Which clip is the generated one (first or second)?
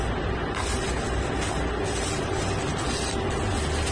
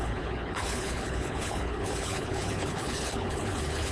second